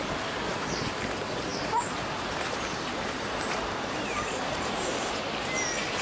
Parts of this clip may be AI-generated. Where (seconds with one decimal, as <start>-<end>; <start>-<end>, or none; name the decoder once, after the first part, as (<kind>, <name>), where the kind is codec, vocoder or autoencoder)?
1.5-5.1 (vocoder, BigVGAN v2)